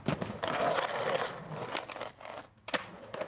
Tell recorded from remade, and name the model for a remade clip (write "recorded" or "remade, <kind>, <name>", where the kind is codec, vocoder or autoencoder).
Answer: recorded